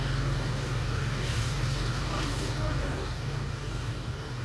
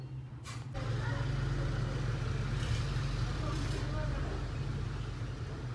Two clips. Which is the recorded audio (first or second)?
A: second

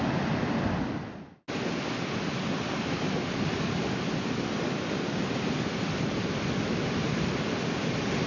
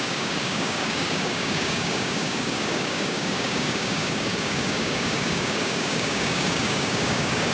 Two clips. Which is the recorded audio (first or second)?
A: first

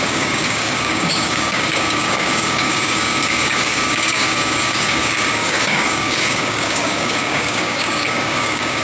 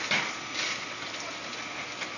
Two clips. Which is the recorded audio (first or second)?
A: second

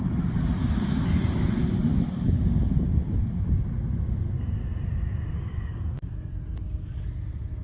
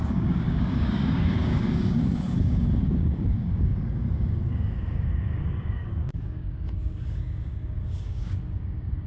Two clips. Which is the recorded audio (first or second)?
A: first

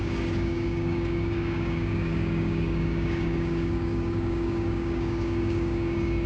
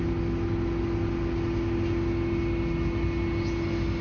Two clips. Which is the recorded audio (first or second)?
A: second